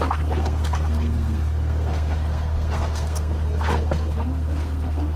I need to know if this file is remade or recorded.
remade